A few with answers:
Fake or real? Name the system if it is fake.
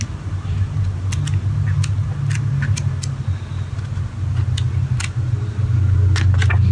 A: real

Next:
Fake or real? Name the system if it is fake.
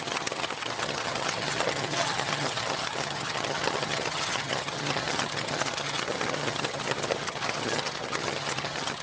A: fake, vocoder, HiFi-GAN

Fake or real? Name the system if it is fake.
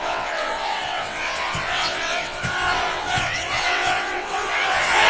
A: fake, vocoder, WaveNeXt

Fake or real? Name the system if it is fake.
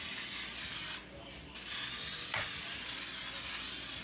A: real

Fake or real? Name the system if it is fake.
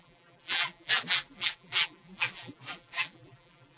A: fake, vocoder, BigVGAN v2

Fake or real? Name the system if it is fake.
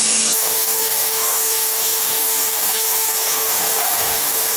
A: fake, codec, DAC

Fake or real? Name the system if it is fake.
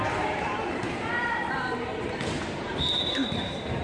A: fake, vocoder, BigVGAN v2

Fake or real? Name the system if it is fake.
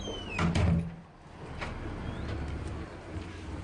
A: real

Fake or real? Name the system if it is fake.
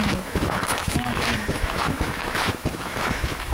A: fake, autoencoder, DAC-VAE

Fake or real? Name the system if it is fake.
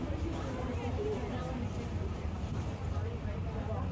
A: real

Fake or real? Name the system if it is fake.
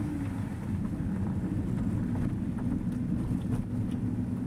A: real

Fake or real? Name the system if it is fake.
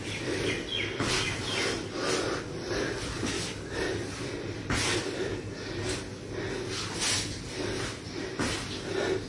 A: real